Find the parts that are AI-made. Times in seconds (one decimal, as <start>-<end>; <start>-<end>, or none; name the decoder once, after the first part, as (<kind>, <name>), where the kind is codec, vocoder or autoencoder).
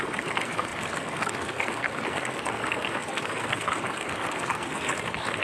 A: 0.0-5.4 (codec, SNAC)